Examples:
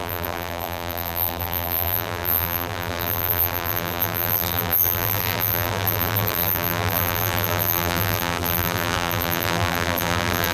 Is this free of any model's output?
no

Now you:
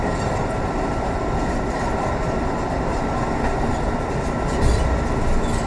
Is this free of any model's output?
yes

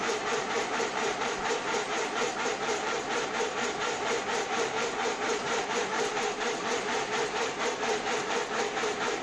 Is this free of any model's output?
no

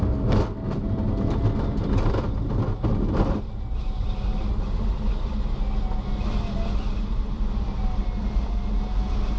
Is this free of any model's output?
yes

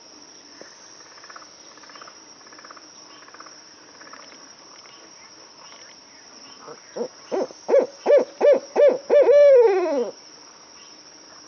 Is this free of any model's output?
yes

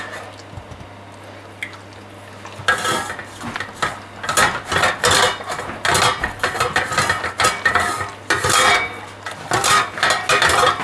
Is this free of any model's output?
yes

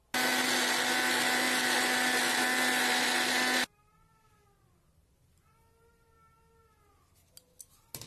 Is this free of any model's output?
yes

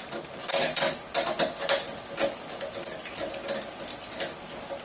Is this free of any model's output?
yes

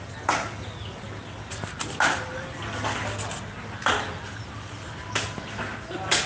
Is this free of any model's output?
yes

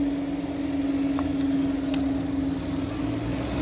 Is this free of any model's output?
yes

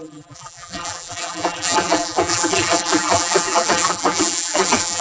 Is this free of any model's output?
no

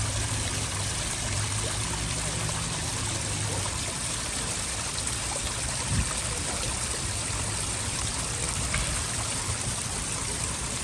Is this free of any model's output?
no